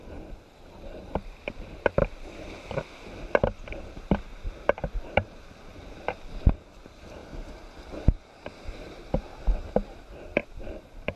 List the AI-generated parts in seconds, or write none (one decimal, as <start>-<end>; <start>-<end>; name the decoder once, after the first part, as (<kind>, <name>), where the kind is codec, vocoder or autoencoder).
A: 0.0-2.0 (vocoder, BigVGAN v2); 3.7-4.3; 4.8-9.3; 10.1-11.2